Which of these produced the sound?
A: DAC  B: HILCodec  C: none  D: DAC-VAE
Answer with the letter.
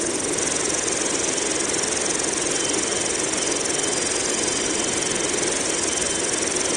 C